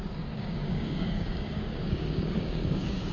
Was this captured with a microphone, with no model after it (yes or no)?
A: no